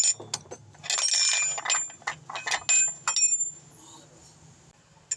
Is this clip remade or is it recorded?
recorded